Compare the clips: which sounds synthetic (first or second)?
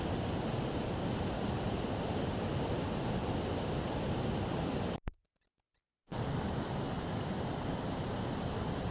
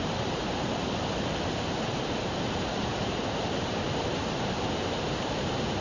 second